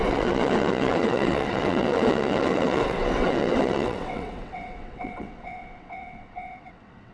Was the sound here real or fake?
fake